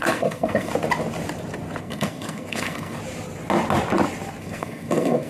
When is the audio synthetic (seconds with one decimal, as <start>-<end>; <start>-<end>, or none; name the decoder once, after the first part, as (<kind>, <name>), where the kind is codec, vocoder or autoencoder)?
0.0-0.7 (codec, SNAC); 1.8-3.0; 4.4-5.3